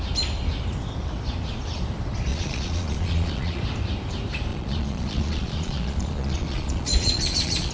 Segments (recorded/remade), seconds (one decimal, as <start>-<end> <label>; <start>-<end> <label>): 0.0-2.3 recorded; 2.3-3.6 remade; 3.6-4.5 recorded; 4.5-7.7 remade